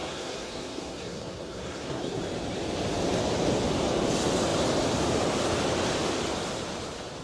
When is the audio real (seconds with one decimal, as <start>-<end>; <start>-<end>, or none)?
2.2-7.2